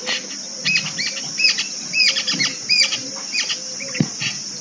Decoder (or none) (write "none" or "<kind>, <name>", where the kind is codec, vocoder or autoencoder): none